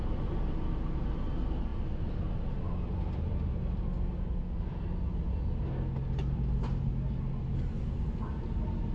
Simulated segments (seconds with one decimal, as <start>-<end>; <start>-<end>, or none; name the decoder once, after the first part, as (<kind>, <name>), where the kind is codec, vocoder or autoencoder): none